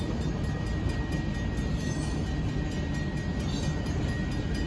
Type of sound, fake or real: real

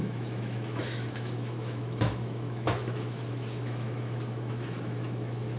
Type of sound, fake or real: fake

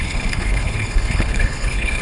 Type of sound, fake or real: fake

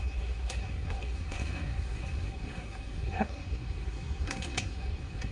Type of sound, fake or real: fake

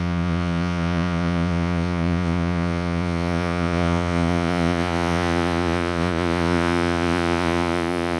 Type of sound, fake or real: fake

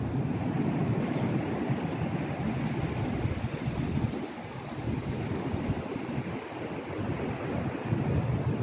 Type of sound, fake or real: real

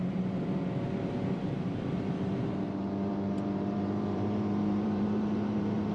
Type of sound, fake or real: fake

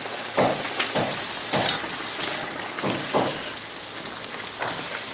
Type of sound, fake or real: real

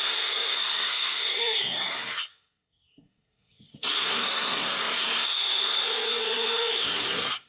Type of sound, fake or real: fake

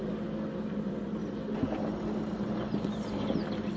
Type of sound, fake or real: real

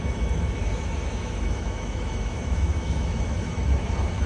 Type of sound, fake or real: fake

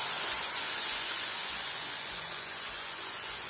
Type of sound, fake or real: fake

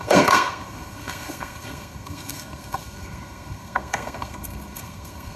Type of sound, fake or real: fake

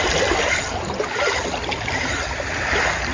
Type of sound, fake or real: real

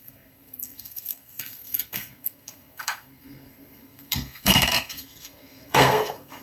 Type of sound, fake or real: fake